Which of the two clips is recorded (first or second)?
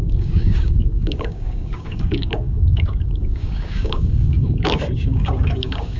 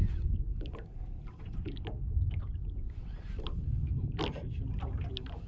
second